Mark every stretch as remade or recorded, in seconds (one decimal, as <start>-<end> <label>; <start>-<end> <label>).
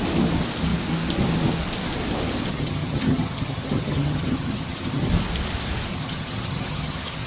0.0-2.5 recorded; 2.5-5.1 remade; 5.1-5.9 recorded; 5.9-7.3 remade